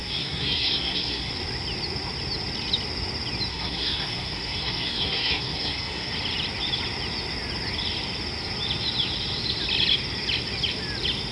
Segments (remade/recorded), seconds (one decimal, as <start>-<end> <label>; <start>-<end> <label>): 0.0-1.3 remade; 1.3-3.5 recorded; 3.5-6.1 remade; 6.1-11.3 recorded

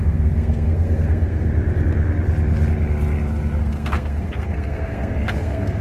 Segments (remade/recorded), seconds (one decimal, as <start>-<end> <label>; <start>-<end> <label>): 0.0-1.5 remade; 1.5-3.6 recorded; 3.6-5.8 remade